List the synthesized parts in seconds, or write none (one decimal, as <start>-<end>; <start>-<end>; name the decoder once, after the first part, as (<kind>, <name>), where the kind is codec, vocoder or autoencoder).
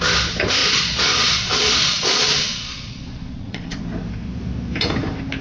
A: 0.6-3.8 (vocoder, Vocos)